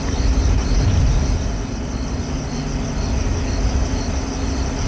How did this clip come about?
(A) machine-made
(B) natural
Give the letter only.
B